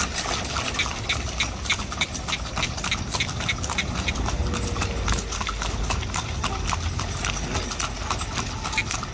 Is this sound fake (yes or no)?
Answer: no